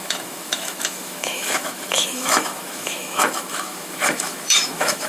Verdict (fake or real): fake